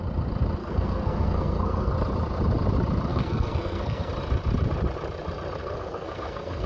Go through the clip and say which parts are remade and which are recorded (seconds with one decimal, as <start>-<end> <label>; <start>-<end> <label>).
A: 0.0-0.6 recorded; 0.6-1.9 remade; 1.9-3.1 recorded; 3.1-4.1 remade; 4.1-5.6 recorded; 5.6-6.7 remade